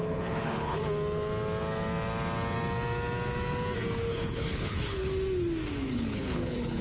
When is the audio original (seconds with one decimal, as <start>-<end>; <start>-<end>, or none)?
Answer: 0.8-4.1; 5.1-5.9